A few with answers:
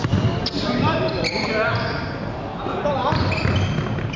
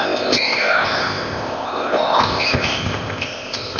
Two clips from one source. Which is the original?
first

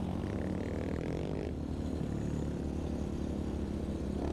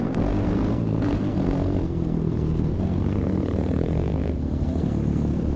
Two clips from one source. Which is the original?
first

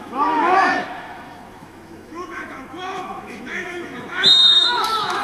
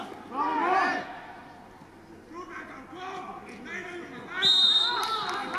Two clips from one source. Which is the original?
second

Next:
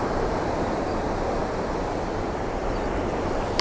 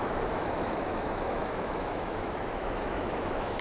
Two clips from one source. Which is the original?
first